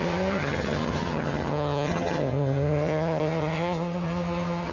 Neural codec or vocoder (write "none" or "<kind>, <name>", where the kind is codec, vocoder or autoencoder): vocoder, HiFi-GAN